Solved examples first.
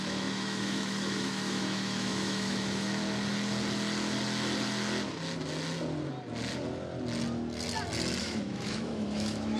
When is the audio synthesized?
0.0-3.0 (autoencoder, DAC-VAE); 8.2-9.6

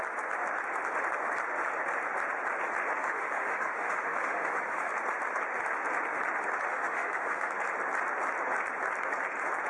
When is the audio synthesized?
3.0-4.9 (autoencoder, DAC-VAE); 6.7-7.5

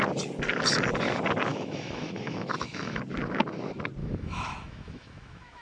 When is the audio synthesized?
1.5-3.0 (autoencoder, DAC-VAE); 4.0-5.6

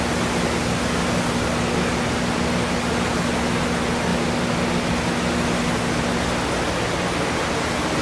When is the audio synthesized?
none

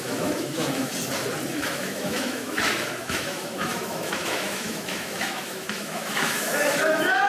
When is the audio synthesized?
0.0-0.9 (autoencoder, DAC-VAE); 1.5-7.3

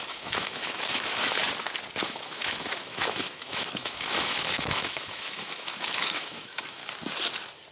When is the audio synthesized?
0.0-1.4 (autoencoder, DAC-VAE); 2.0-6.8

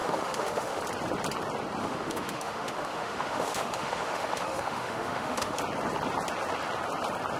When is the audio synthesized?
0.0-0.8 (autoencoder, DAC-VAE); 1.8-5.6

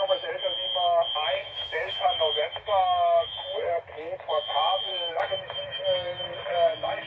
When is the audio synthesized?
1.4-3.4 (autoencoder, DAC-VAE); 4.9-5.8